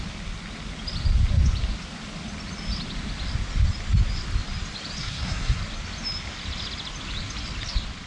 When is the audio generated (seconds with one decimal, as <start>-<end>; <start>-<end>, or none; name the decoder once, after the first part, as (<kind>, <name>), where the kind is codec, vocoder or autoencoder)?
5.0-5.6 (codec, SNAC)